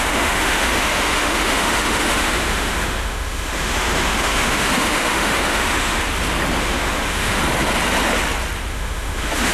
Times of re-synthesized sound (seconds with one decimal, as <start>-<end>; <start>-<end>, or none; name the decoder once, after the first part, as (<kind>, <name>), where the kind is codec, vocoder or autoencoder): 0.0-6.0 (autoencoder, DAC-VAE); 6.6-7.4; 8.7-9.5